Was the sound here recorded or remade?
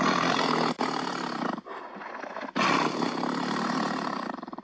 recorded